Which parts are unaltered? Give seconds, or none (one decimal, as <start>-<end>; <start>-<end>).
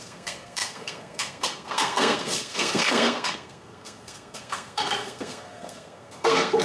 none